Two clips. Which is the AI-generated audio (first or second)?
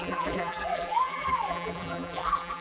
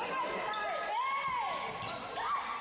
first